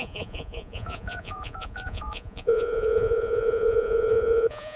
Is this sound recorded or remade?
remade